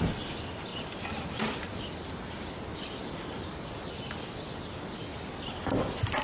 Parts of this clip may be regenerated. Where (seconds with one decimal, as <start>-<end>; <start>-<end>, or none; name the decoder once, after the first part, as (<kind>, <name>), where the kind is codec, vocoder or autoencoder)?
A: none